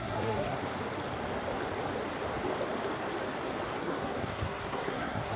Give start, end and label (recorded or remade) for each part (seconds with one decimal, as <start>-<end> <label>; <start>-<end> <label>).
0.0-0.6 remade; 0.6-3.8 recorded; 3.8-5.4 remade